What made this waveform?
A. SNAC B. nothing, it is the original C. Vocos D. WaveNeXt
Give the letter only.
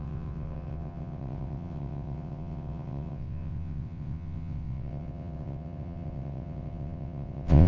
D